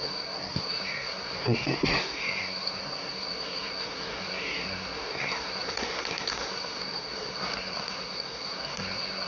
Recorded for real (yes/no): no